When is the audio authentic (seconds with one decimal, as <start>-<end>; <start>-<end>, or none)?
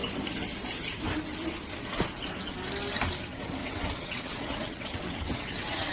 0.0-3.6